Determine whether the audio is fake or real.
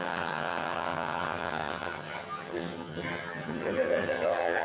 fake